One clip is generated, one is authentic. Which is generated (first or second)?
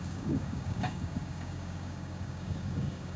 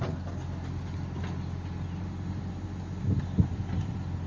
first